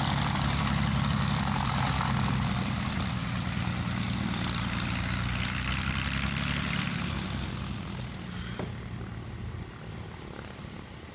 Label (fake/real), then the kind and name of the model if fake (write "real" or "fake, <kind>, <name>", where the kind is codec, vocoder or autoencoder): fake, vocoder, BigVGAN v2